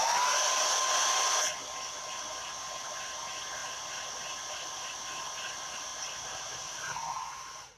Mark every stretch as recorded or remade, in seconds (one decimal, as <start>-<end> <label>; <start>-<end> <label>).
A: 0.0-5.9 recorded; 5.9-7.8 remade